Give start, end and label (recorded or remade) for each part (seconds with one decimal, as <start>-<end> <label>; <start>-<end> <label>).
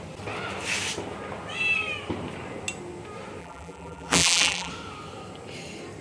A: 0.0-3.4 recorded; 3.4-4.7 remade; 4.7-6.0 recorded